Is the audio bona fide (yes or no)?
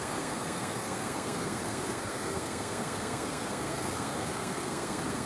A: no